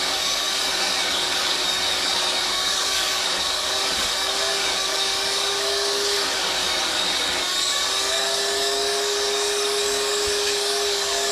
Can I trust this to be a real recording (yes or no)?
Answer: no